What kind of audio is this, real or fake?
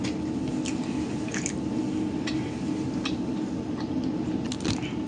real